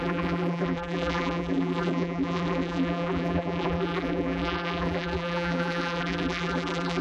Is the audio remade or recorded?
remade